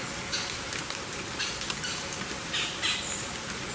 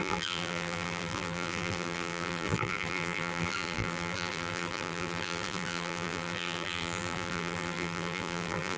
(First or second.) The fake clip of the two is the second